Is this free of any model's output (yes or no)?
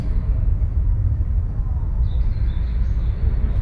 yes